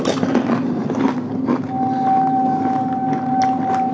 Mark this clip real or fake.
real